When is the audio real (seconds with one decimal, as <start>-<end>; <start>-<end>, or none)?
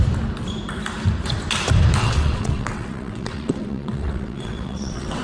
0.0-2.0